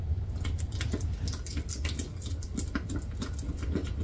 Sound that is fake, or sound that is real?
real